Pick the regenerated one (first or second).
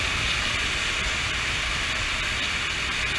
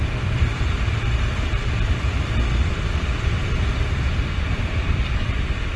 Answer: second